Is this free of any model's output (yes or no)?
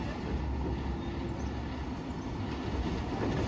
yes